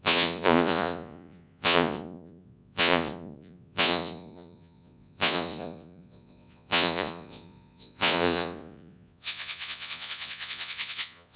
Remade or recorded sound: remade